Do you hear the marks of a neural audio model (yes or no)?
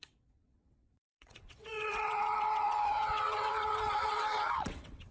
yes